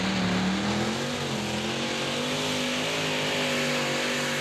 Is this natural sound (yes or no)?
yes